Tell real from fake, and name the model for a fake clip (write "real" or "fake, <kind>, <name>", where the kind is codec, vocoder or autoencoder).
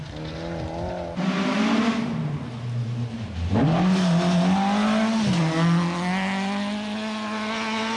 real